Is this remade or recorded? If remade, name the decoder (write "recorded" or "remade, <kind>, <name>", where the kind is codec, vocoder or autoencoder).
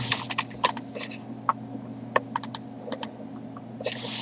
recorded